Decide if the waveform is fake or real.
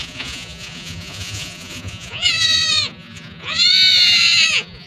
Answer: fake